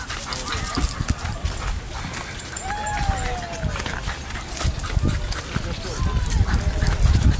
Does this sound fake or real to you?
real